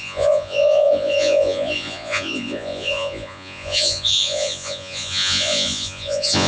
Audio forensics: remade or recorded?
remade